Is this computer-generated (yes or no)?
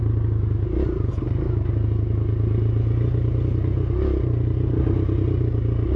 no